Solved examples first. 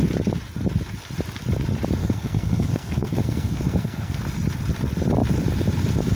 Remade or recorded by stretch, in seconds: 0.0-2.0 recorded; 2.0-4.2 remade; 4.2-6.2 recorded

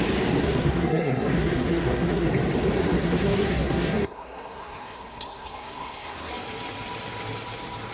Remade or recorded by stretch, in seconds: 0.0-0.4 recorded; 0.4-2.3 remade; 2.3-3.0 recorded; 3.0-6.3 remade; 6.3-7.9 recorded

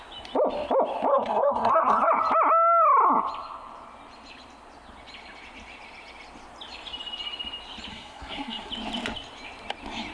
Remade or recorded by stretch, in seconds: 0.0-1.1 recorded; 1.1-2.1 remade; 2.1-7.9 recorded; 7.9-8.7 remade; 8.7-10.1 recorded

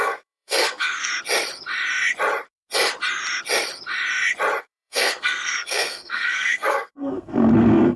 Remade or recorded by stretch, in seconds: 0.0-1.1 remade; 1.1-4.6 recorded; 4.6-8.0 remade

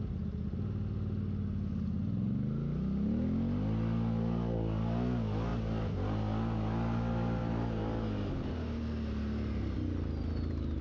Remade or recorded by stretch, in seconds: 0.0-10.8 recorded

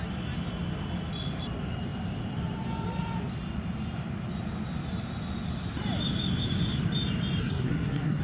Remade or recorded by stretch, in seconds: 0.0-7.4 recorded; 7.4-8.2 remade

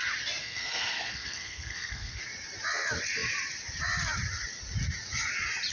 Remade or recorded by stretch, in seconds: 0.0-0.4 recorded; 0.4-2.2 remade; 2.2-5.7 recorded